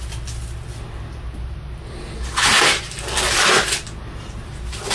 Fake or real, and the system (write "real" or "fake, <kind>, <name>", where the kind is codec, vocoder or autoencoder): real